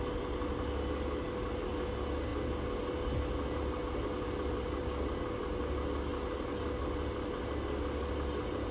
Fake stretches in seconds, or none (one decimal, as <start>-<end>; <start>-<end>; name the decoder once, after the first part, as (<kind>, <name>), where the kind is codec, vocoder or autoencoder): none